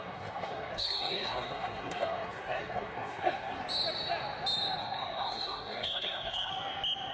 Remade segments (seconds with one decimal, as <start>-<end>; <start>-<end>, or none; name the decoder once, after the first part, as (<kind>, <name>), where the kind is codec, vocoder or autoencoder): 0.0-3.6 (codec, SNAC); 4.8-6.5

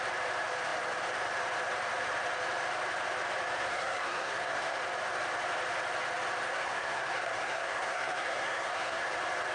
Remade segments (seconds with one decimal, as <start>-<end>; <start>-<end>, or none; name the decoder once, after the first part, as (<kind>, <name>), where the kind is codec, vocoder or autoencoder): 3.7-4.8 (codec, SNAC); 6.5-9.1

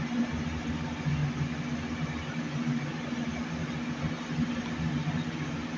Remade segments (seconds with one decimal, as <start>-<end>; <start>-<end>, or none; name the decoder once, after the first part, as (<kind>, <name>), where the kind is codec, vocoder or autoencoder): none

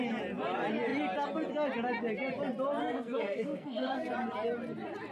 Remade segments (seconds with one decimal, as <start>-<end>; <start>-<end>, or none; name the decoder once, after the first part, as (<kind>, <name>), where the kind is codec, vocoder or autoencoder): 2.8-4.1 (codec, SNAC)

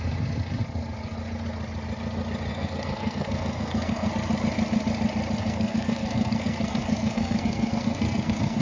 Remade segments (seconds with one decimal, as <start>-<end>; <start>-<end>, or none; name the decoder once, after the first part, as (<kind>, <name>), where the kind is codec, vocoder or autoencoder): 2.5-4.1 (codec, SNAC); 5.4-8.6

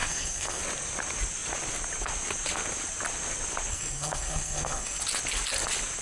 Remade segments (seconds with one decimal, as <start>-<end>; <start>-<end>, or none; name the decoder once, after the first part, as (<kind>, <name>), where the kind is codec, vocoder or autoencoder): 0.0-0.6 (codec, SNAC); 3.7-5.0